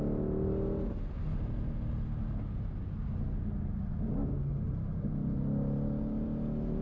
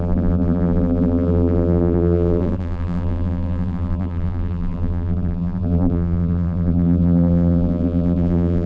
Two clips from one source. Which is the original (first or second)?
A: first